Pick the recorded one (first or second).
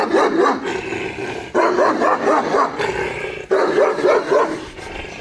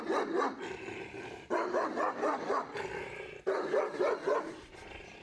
first